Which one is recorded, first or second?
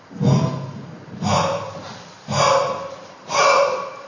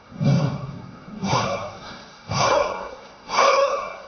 first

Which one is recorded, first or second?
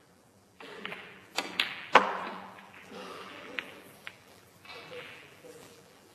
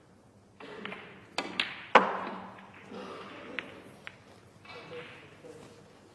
second